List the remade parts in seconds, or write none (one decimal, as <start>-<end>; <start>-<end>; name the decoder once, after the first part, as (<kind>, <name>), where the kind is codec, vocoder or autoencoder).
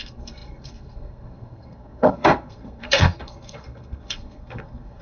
0.0-5.0 (codec, SNAC)